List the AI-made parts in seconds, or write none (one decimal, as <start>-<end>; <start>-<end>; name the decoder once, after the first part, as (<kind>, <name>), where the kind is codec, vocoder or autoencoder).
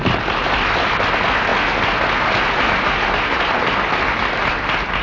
none